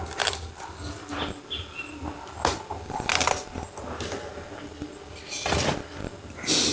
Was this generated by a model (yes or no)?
no